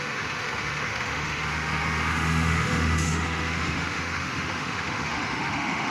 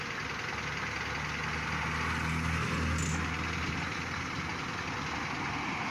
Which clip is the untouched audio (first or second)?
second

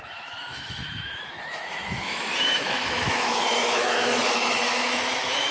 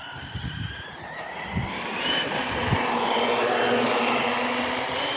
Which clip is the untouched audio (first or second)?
second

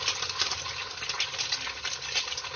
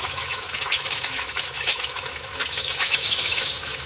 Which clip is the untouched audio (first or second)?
first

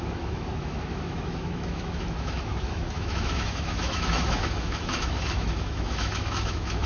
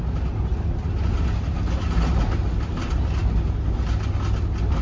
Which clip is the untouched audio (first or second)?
second